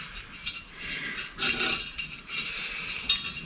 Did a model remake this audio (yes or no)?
no